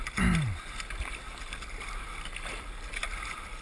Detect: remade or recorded recorded